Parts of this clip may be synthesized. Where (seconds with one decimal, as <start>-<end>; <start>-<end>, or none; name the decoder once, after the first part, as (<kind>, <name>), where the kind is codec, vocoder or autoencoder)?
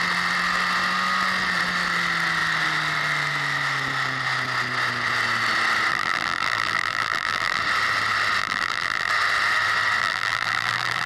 5.9-7.6 (vocoder, BigVGAN v2); 8.4-9.1; 10.0-11.1